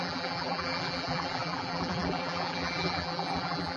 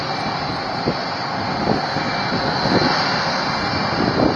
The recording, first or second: second